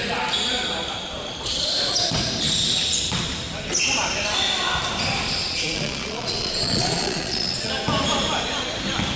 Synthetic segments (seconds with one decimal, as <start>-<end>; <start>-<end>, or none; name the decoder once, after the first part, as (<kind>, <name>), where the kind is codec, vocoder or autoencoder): 5.4-7.7 (vocoder, Vocos)